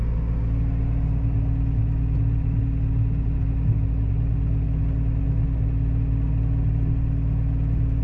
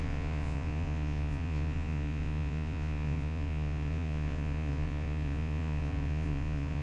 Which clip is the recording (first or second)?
first